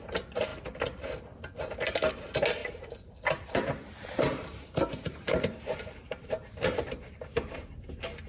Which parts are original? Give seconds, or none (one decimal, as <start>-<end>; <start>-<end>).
0.0-2.6; 7.2-8.3